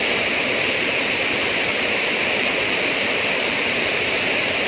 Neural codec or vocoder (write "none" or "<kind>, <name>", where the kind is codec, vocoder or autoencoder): vocoder, BigVGAN v2